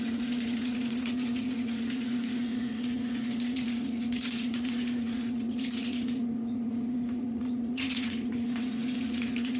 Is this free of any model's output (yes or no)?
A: no